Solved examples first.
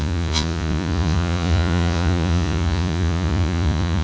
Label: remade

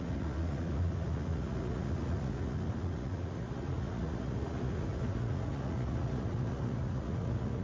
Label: remade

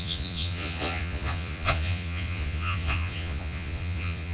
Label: remade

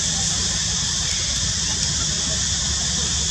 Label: recorded